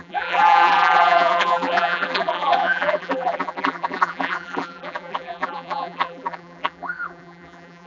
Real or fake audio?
fake